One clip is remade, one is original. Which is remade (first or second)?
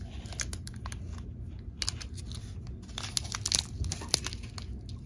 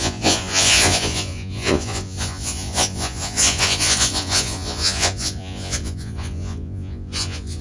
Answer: second